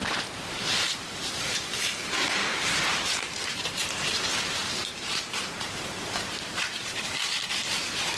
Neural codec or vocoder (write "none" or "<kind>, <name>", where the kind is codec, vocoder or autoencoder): vocoder, BigVGAN v2